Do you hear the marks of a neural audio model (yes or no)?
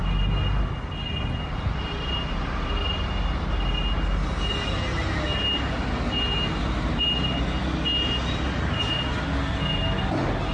no